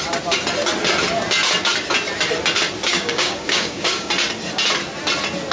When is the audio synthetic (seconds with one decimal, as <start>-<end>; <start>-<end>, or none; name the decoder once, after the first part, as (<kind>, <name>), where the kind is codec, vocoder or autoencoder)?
2.9-4.1 (codec, DAC)